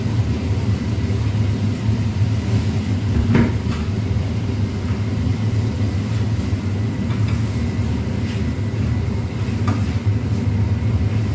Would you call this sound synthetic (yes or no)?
no